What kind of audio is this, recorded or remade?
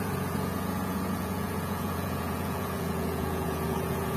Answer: remade